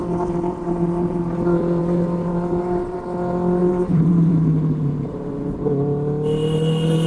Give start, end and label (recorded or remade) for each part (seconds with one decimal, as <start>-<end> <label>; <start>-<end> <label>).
0.0-1.2 remade; 1.2-1.8 recorded; 1.8-3.0 remade; 3.0-3.6 recorded; 3.6-5.3 remade; 5.3-7.1 recorded